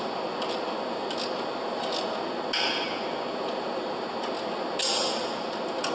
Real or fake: real